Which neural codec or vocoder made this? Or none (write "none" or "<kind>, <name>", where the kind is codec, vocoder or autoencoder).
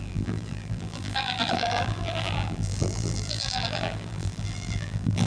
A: vocoder, BigVGAN v2